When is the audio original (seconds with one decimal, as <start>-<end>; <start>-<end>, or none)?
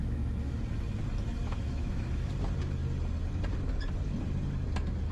0.6-1.4; 2.3-5.1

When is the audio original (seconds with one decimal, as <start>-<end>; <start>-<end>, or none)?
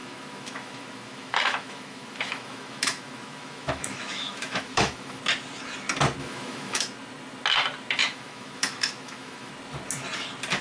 5.2-6.2; 6.8-8.0; 9.5-10.6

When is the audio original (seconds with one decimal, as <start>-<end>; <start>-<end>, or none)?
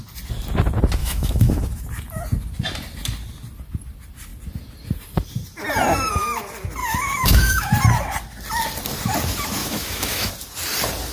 0.0-1.0; 1.6-6.8; 7.7-9.6; 10.3-11.1